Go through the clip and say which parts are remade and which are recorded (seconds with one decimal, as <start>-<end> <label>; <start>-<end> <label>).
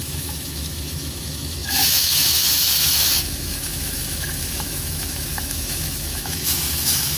0.0-7.2 remade